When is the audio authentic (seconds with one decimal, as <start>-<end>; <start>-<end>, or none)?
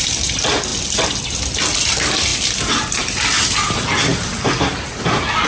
0.0-5.5